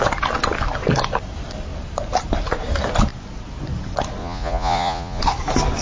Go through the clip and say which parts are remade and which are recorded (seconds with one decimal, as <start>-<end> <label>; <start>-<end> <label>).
0.0-4.2 recorded; 4.2-5.2 remade; 5.2-5.8 recorded